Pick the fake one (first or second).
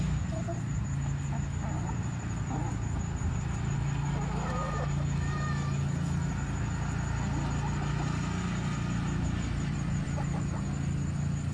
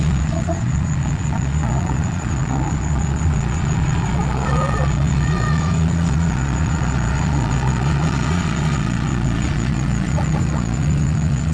second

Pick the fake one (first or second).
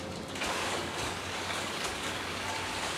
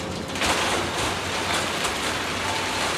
first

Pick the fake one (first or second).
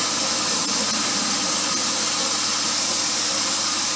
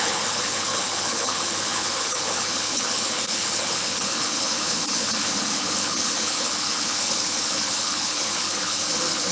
second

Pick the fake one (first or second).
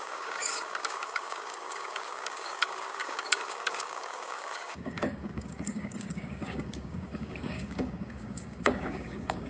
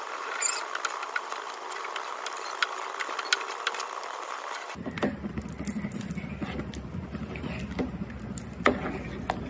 first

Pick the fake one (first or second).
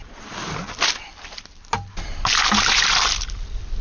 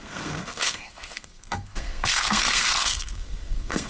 second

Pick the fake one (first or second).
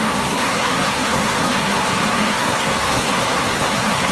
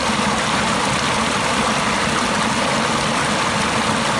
first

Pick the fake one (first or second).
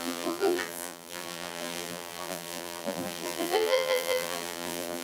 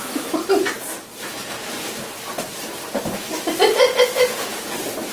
first